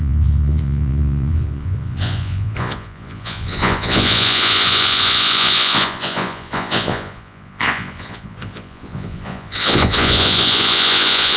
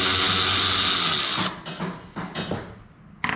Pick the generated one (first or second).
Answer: first